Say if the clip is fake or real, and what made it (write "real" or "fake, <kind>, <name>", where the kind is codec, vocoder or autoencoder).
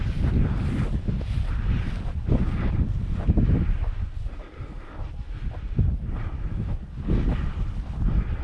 real